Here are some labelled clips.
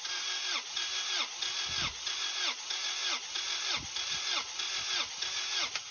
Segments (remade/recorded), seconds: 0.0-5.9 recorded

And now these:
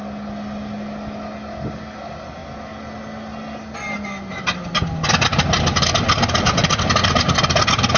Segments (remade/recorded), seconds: 0.0-8.0 recorded

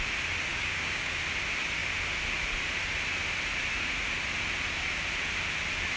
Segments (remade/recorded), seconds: 0.0-0.5 recorded; 0.5-1.2 remade; 1.2-6.0 recorded

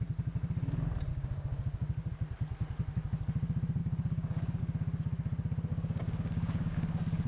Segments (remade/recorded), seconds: 0.0-1.1 recorded; 1.1-2.1 remade; 2.1-3.8 recorded; 3.8-4.6 remade; 4.6-5.7 recorded; 5.7-7.3 remade

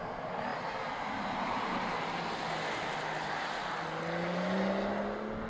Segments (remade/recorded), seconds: 0.0-5.5 recorded